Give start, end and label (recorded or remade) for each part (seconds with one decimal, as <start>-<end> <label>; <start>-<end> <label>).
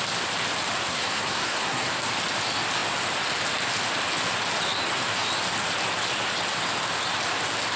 0.0-0.9 recorded; 0.9-1.9 remade; 1.9-7.8 recorded